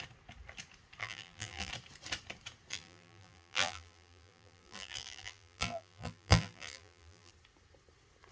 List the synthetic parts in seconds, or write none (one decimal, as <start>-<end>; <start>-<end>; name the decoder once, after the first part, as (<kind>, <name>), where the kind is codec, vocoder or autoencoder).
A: 1.0-1.7 (vocoder, BigVGAN v2); 2.7-7.3

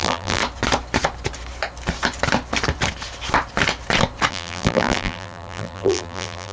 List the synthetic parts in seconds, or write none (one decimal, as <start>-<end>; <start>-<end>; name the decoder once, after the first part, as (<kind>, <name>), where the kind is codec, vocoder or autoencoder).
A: 0.0-0.4 (vocoder, BigVGAN v2); 4.3-6.5

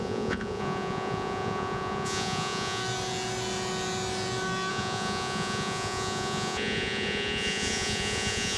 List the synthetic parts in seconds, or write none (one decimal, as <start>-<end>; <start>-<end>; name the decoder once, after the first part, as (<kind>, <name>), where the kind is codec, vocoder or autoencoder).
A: 0.0-2.8 (vocoder, Vocos); 4.7-8.6

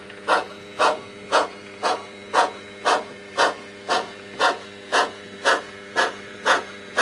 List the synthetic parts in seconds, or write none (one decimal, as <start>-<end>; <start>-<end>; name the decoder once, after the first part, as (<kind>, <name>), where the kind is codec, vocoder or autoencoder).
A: 0.0-7.0 (vocoder, Vocos)